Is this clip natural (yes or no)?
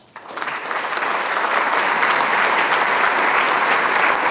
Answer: no